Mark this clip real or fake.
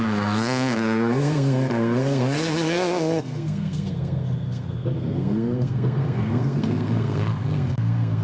fake